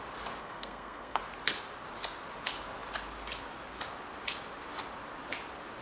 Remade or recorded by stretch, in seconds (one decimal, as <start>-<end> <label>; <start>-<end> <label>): 0.0-0.4 recorded; 0.4-1.2 remade; 1.2-5.8 recorded